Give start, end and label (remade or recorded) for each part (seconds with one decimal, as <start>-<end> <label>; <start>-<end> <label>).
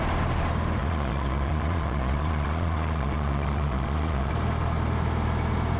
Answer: 0.0-0.8 recorded; 0.8-4.3 remade; 4.3-5.8 recorded